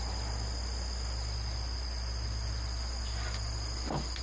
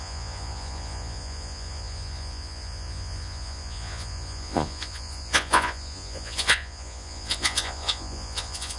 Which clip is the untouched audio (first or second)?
first